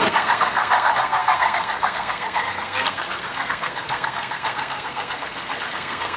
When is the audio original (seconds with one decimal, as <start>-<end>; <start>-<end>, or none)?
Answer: none